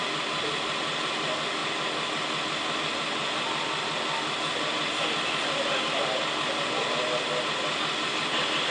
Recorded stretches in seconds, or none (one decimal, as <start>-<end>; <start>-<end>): 0.0-8.7